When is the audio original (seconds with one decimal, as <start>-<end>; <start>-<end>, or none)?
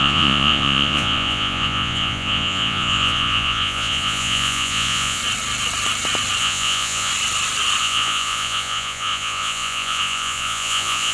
5.2-6.4; 7.1-7.8